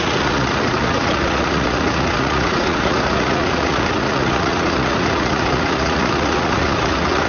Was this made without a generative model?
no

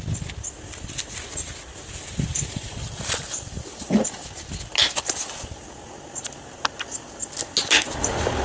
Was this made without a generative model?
yes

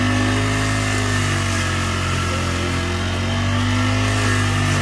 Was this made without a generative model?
yes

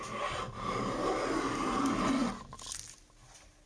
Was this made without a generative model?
yes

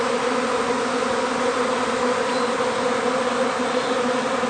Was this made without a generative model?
yes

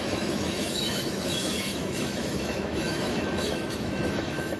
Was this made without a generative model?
no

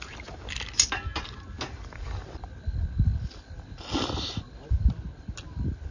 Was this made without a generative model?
yes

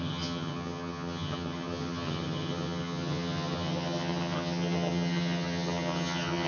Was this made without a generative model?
no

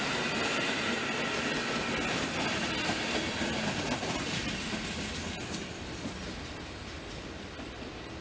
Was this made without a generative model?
yes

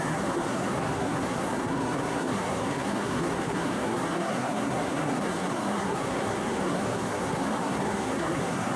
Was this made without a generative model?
no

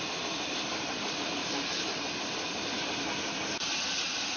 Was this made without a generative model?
yes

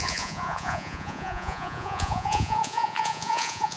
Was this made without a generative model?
no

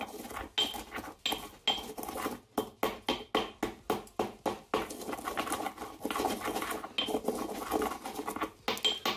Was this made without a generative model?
yes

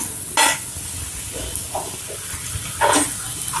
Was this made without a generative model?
yes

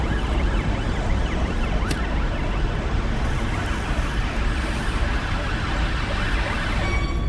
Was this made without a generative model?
yes